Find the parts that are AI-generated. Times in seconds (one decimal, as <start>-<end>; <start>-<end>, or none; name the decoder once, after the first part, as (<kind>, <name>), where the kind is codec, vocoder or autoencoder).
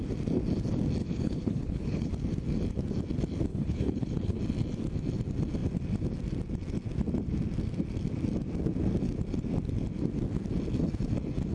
1.0-2.1 (codec, HILCodec); 3.5-4.4